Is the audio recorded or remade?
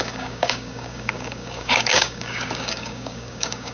remade